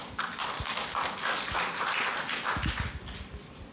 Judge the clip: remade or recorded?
recorded